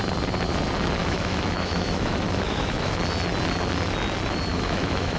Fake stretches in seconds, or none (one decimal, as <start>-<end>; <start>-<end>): 1.0-3.0; 4.5-5.2